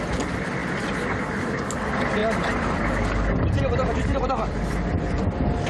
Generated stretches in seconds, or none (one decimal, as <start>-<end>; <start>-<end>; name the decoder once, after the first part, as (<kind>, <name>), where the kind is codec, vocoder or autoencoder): 0.6-1.5 (vocoder, BigVGAN v2); 2.2-5.2